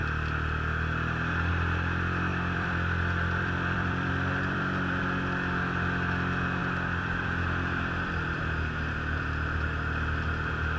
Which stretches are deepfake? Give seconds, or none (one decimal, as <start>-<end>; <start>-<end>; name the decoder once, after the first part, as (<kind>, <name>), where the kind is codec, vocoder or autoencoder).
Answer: 2.3-5.0 (vocoder, BigVGAN v2); 6.6-8.4